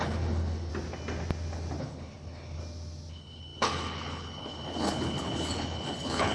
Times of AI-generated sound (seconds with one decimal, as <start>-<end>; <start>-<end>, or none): 0.0-0.7; 1.8-2.6; 3.1-6.3